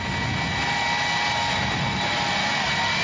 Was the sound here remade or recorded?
recorded